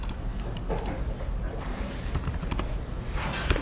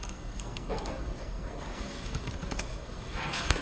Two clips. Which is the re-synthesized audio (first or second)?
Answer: second